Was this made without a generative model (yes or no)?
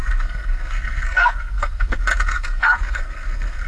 no